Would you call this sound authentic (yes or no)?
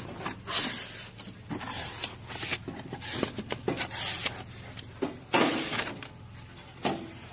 yes